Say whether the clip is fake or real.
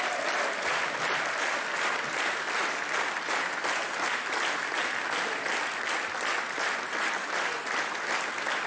real